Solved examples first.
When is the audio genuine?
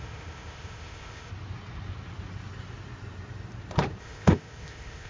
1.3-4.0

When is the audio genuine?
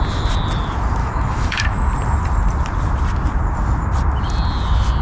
0.0-1.0; 1.9-5.0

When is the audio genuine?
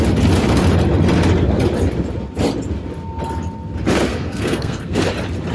0.0-4.1; 5.0-5.5